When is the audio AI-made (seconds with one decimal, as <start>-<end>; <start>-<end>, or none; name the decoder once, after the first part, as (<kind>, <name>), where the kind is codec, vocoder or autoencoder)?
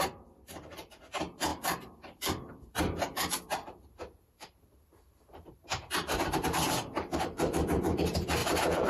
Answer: 0.0-8.9 (vocoder, BigVGAN v2)